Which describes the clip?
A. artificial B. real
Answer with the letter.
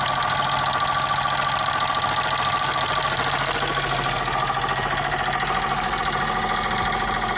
B